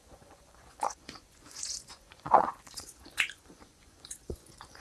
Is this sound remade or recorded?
remade